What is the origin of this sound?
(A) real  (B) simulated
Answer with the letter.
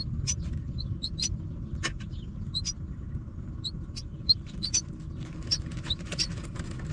A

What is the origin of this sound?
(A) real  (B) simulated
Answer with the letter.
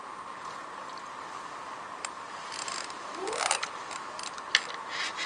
A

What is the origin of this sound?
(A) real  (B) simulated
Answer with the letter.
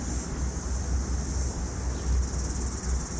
A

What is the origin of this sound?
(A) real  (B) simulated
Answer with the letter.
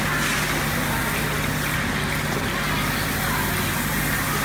A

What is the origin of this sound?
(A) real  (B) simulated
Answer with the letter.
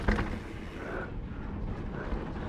A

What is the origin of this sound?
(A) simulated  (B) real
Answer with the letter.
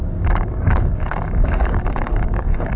A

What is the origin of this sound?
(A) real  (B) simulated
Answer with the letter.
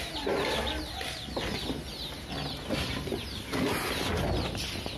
A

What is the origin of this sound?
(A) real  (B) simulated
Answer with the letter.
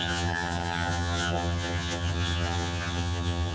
B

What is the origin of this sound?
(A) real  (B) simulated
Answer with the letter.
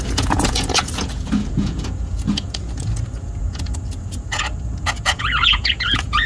B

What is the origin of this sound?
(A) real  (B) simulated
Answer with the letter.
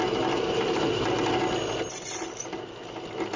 A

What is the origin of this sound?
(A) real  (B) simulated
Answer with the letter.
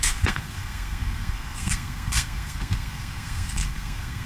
B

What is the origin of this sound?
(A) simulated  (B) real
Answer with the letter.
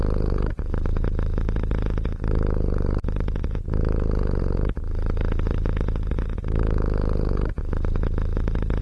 B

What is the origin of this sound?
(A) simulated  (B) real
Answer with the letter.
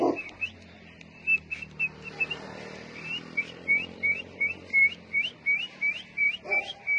A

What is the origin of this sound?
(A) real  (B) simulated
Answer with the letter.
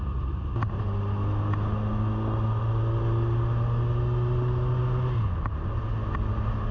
A